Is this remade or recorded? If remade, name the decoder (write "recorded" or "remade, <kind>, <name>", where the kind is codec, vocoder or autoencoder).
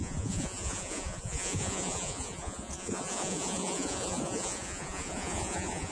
remade, vocoder, Vocos